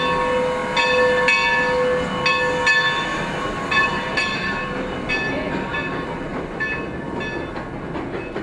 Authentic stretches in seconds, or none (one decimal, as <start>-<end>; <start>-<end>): 0.0-3.1; 5.1-8.4

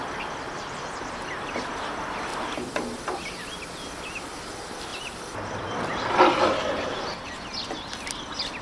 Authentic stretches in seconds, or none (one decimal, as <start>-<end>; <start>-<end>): 0.0-2.3; 4.4-4.9; 6.5-8.6